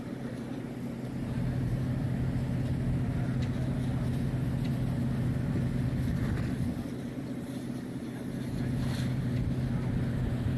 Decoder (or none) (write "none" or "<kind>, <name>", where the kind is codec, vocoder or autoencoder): none